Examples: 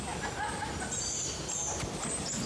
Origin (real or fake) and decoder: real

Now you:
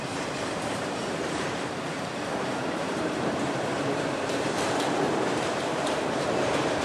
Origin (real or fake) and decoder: fake, vocoder, BigVGAN v2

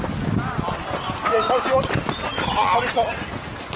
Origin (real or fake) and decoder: real